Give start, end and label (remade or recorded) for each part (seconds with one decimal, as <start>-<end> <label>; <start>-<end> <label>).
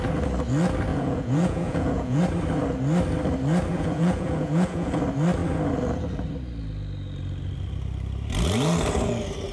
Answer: 0.0-0.9 recorded; 0.9-2.2 remade; 2.2-3.7 recorded; 3.7-5.0 remade; 5.0-9.5 recorded